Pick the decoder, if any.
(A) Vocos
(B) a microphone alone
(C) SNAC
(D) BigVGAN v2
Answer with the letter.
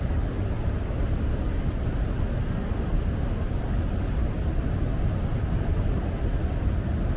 B